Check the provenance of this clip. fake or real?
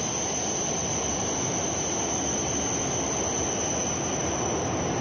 real